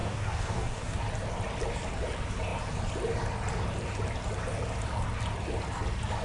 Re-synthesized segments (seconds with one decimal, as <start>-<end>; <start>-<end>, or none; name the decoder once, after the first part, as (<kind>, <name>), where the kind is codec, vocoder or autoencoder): 0.0-1.0 (codec, DAC)